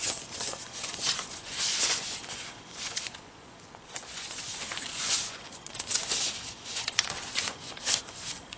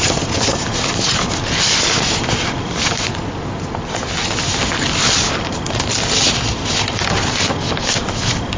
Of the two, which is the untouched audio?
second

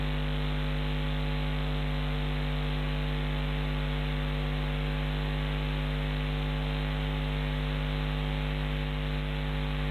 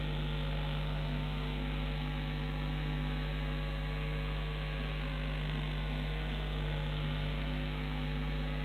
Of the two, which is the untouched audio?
first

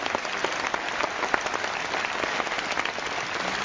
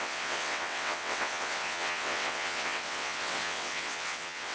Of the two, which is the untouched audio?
first